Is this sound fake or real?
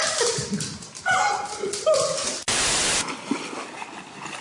real